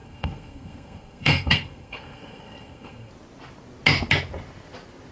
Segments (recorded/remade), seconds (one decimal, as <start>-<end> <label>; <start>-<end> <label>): 0.0-3.1 remade; 3.1-5.1 recorded